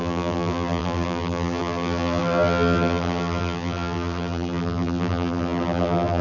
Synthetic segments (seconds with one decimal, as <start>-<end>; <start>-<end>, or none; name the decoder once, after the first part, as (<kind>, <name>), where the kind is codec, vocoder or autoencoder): 0.0-6.2 (vocoder, BigVGAN v2)